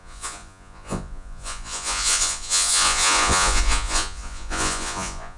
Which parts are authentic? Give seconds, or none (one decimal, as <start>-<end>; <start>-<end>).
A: none